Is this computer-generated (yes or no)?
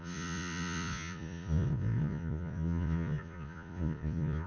yes